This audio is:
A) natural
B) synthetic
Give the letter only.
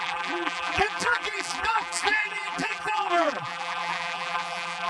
B